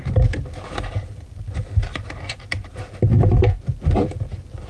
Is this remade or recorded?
recorded